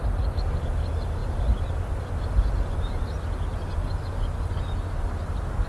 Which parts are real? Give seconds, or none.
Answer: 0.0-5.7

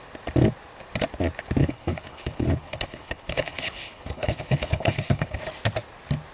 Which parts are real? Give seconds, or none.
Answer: 0.0-1.6; 5.4-6.3

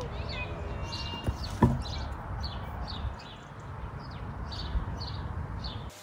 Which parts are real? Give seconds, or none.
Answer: 0.0-6.0

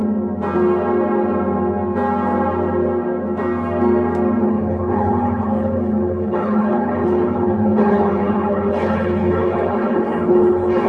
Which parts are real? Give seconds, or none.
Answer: 0.0-4.4